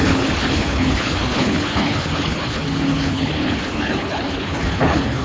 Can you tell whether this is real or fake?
fake